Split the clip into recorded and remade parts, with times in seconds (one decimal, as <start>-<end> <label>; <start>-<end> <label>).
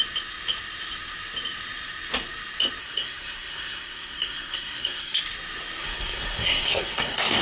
0.0-2.8 recorded; 2.8-5.2 remade; 5.2-5.8 recorded; 5.8-7.4 remade